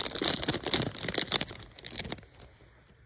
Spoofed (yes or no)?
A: no